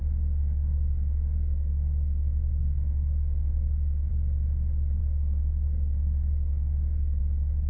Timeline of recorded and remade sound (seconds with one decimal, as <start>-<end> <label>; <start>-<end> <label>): 0.0-4.1 remade; 4.1-5.0 recorded; 5.0-7.2 remade; 7.2-7.7 recorded